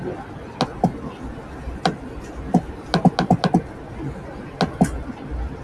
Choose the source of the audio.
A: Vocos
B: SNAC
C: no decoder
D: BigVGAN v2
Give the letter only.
C